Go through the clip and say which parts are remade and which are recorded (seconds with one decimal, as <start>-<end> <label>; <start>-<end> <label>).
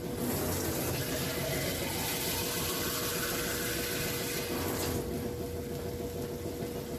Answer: 0.0-7.0 recorded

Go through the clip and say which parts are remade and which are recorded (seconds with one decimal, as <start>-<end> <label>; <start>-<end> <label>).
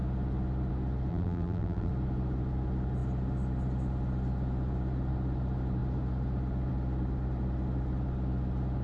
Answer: 0.0-1.1 recorded; 1.1-1.9 remade; 1.9-8.8 recorded